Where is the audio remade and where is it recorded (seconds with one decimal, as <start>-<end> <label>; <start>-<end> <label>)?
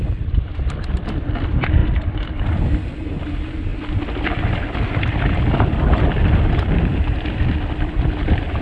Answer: 0.0-1.8 remade; 1.8-3.2 recorded; 3.2-3.7 remade; 3.7-5.5 recorded; 5.5-8.6 remade